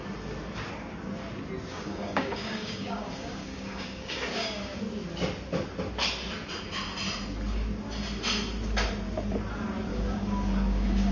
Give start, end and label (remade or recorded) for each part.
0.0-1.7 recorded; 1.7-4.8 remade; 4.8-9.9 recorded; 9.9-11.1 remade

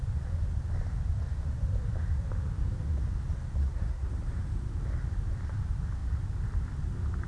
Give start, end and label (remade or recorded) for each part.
0.0-3.6 recorded; 3.6-4.1 remade; 4.1-7.3 recorded